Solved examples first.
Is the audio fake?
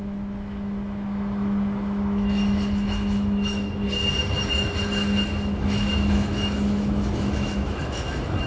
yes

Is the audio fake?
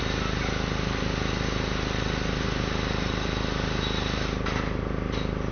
no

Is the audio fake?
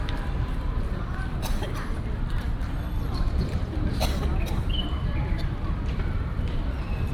yes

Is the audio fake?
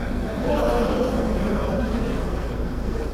yes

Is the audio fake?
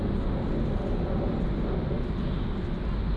no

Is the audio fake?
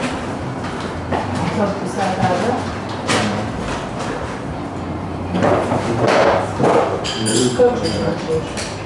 yes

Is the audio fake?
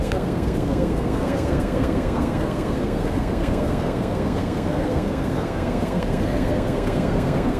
yes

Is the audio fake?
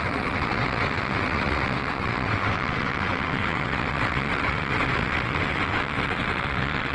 yes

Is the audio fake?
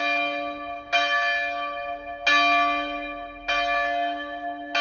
no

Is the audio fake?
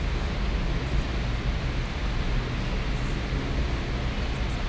no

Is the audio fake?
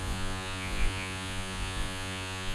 yes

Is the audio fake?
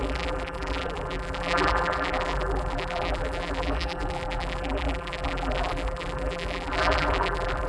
yes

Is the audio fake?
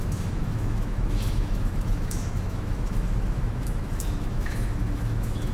yes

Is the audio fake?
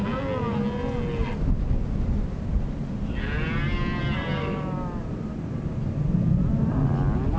no